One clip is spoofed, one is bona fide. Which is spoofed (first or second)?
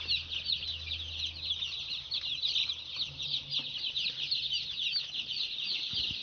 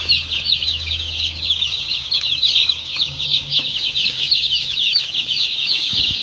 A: second